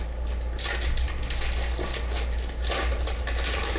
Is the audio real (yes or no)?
yes